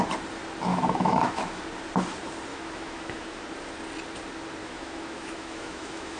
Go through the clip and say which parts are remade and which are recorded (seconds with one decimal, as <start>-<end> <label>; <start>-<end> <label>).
0.0-0.7 recorded; 0.7-1.6 remade; 1.6-2.5 recorded; 2.5-3.4 remade; 3.4-4.6 recorded; 4.6-6.2 remade